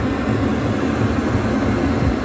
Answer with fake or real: real